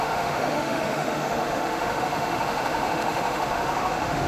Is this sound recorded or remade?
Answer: remade